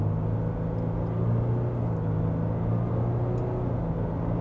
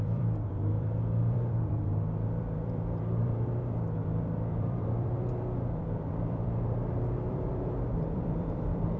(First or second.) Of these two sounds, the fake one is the second